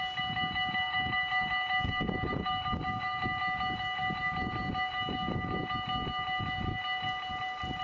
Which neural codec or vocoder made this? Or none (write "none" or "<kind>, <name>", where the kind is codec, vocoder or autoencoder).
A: none